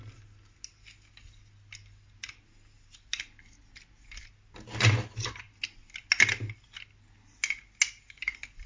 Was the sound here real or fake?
real